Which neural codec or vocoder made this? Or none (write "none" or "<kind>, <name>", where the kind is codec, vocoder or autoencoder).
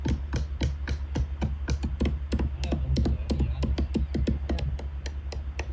none